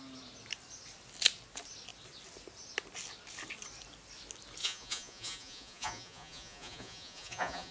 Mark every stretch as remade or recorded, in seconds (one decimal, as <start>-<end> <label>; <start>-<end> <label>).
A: 0.0-4.6 recorded; 4.6-7.7 remade